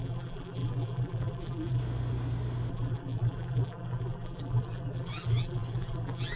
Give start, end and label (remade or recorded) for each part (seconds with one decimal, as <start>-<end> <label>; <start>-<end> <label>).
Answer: 0.0-1.8 remade; 1.8-2.7 recorded; 2.7-6.4 remade